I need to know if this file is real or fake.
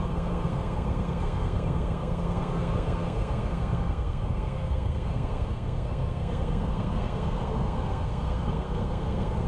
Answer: fake